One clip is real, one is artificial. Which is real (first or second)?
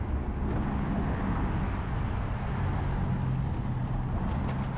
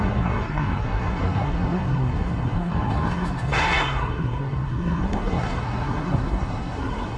first